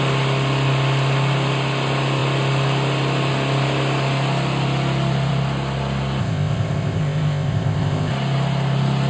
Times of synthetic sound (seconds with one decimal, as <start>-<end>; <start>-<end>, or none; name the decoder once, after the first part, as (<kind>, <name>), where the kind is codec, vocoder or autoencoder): 6.2-8.1 (codec, ZipCodec)